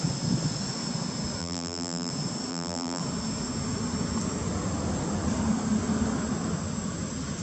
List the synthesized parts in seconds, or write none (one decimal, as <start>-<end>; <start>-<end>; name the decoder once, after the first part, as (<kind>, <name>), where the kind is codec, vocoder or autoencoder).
1.4-2.1 (vocoder, BigVGAN v2); 2.5-3.0